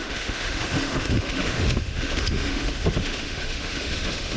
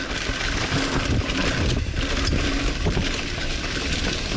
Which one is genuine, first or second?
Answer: second